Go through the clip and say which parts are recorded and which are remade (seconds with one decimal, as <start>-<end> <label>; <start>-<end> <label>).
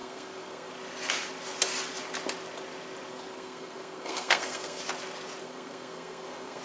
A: 0.0-0.7 remade; 0.7-3.1 recorded; 3.1-4.8 remade; 4.8-5.4 recorded; 5.4-6.6 remade